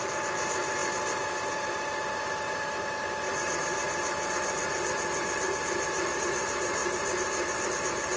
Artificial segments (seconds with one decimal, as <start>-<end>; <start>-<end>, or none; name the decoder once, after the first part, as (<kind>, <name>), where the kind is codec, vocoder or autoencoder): none